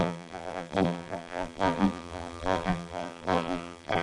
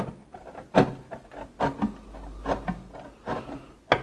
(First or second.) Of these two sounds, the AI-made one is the first